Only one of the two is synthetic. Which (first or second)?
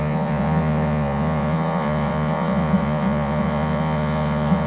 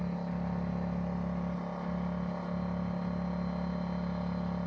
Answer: first